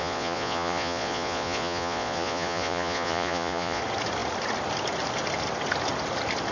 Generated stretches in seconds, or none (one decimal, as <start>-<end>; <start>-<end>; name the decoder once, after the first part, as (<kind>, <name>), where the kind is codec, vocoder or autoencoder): 0.0-3.8 (vocoder, Vocos)